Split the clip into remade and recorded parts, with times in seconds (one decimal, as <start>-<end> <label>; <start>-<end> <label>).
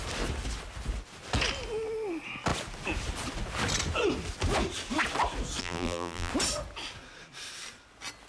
0.0-5.6 recorded; 5.6-6.3 remade; 6.3-8.3 recorded